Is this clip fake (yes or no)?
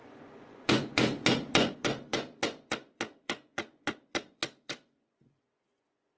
yes